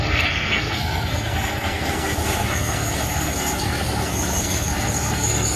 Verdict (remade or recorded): remade